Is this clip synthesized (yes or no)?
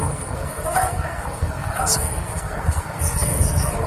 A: yes